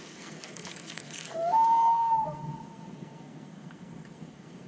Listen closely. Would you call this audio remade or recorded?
remade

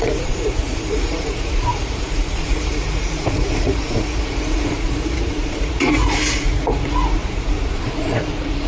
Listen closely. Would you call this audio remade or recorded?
remade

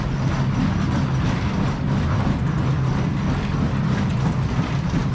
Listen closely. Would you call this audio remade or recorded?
recorded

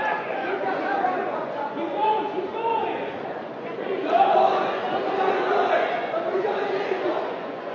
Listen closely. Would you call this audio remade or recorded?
remade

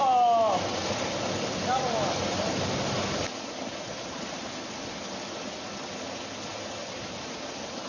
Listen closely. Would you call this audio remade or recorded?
recorded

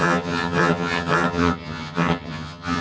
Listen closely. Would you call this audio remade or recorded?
remade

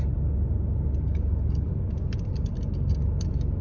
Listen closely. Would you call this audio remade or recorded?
recorded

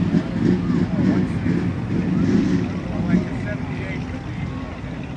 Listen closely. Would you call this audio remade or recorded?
recorded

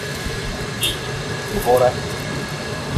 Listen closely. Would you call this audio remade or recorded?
recorded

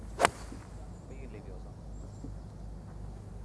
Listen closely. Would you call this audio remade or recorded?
recorded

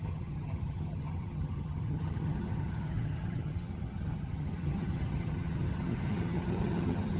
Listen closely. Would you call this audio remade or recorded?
remade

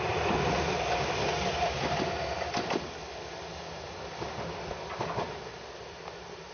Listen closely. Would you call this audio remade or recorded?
recorded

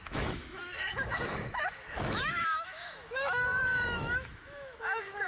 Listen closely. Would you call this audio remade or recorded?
remade